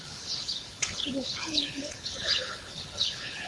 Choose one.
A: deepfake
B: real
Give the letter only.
A